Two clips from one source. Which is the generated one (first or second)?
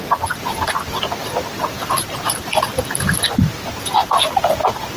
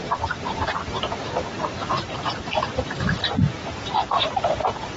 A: second